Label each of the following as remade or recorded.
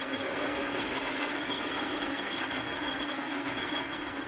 remade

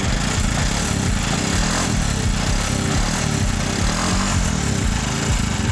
recorded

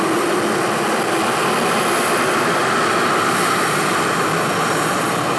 recorded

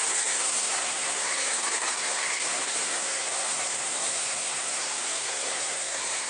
remade